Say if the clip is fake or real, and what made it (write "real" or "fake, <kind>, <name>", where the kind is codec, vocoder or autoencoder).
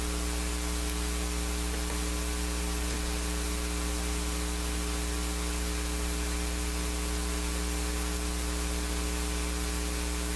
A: real